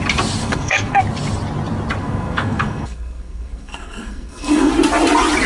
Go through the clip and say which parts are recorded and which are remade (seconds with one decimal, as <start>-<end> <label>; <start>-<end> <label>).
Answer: 0.0-0.4 recorded; 0.4-1.0 remade; 1.0-2.0 recorded; 2.0-4.7 remade; 4.7-5.5 recorded